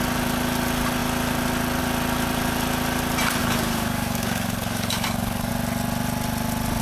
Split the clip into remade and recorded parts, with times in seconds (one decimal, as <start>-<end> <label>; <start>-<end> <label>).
0.0-3.4 recorded; 3.4-5.5 remade; 5.5-6.8 recorded